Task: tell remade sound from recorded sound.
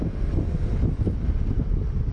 recorded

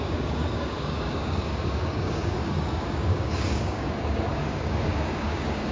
remade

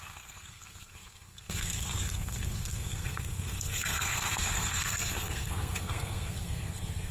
remade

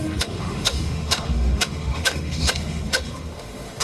remade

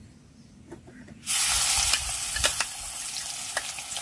recorded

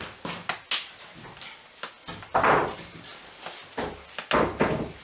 recorded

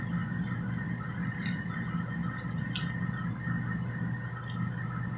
recorded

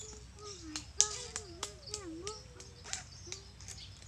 recorded